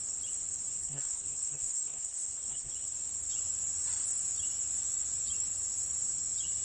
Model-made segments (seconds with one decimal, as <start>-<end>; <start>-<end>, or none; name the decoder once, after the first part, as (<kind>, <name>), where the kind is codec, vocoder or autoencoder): 0.8-2.7 (codec, SNAC)